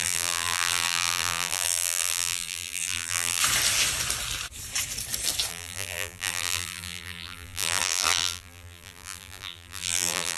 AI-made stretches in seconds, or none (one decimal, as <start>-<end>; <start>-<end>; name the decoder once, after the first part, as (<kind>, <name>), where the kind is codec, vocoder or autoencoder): 0.0-3.4 (vocoder, BigVGAN v2); 5.5-10.4